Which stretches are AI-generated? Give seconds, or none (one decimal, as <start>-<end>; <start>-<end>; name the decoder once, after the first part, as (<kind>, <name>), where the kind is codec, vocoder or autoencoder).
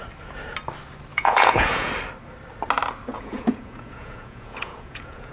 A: 1.1-1.9 (vocoder, Vocos); 3.1-5.3